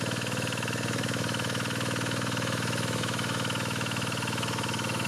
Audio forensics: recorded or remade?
remade